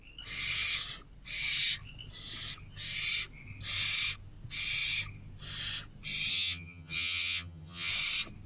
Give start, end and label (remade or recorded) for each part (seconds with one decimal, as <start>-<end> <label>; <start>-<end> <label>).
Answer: 0.0-6.3 recorded; 6.3-7.9 remade; 7.9-8.5 recorded